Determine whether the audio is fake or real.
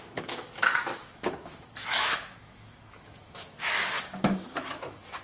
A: fake